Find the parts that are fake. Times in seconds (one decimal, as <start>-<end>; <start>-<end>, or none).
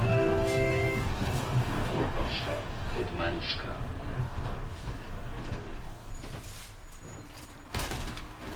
0.0-3.0; 4.2-6.1; 7.7-8.6